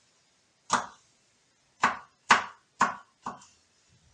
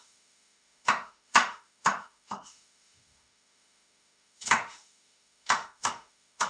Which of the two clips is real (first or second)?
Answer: first